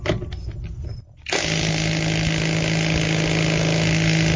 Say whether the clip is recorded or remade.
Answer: recorded